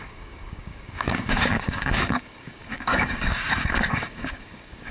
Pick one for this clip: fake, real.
fake